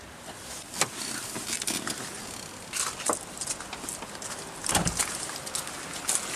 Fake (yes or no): no